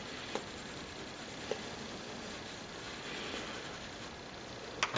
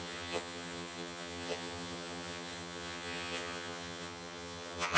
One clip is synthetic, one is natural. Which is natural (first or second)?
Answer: first